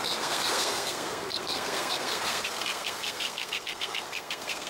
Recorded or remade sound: remade